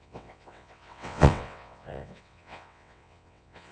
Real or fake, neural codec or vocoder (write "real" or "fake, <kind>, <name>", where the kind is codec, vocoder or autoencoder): fake, vocoder, WaveNeXt